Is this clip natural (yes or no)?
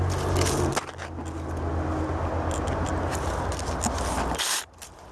yes